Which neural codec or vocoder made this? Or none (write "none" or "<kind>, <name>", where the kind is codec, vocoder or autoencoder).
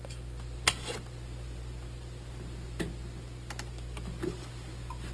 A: none